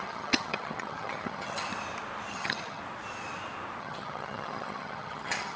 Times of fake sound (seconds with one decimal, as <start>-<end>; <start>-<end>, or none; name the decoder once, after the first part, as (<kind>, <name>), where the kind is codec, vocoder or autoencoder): 0.0-1.7 (vocoder, HiFi-GAN); 2.3-2.8; 3.8-5.6